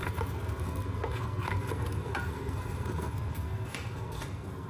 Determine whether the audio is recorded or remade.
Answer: remade